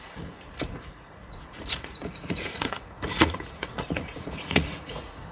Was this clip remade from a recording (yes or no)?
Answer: yes